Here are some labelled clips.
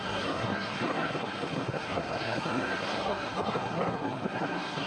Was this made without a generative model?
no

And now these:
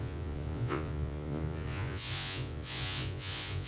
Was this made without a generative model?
no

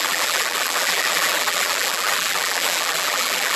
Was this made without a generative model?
no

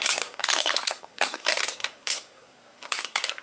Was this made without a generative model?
no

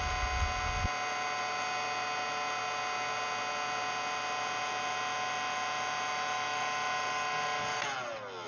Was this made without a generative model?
yes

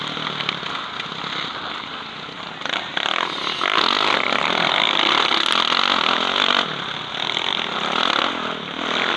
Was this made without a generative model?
yes